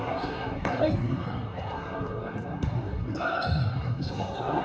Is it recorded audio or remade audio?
remade